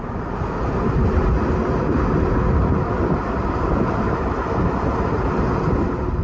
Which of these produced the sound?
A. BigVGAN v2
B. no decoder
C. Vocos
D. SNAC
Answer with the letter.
B